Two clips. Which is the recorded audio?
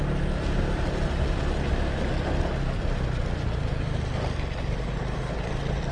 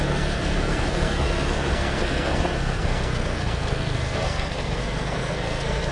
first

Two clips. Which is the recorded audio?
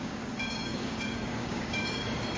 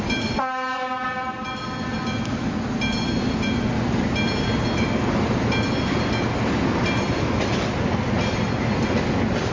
second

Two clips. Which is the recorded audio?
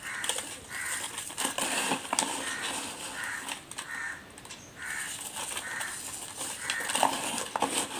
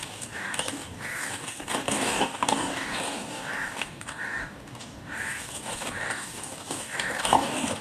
first